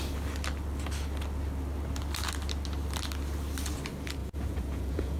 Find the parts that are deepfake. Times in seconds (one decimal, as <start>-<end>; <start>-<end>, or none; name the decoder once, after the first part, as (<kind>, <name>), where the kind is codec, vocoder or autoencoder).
4.2-5.2 (vocoder, Vocos)